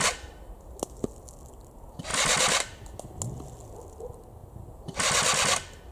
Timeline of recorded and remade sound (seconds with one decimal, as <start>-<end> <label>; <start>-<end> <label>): 0.0-5.9 recorded